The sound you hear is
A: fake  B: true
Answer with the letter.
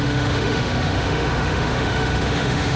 A